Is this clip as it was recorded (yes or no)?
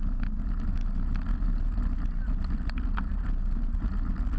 yes